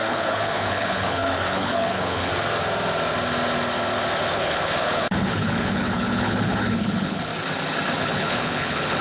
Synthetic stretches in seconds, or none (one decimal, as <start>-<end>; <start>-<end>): 0.0-2.3; 4.3-7.3; 8.0-9.0